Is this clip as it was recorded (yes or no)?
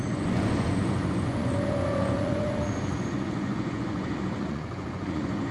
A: no